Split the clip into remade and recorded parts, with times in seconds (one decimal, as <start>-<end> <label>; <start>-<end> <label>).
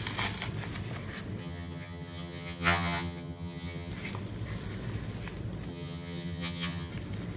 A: 0.0-1.4 recorded; 1.4-3.9 remade; 3.9-5.7 recorded; 5.7-6.9 remade; 6.9-7.4 recorded